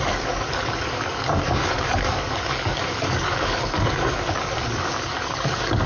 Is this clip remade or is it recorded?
remade